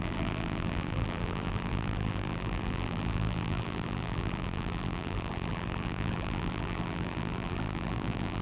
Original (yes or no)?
no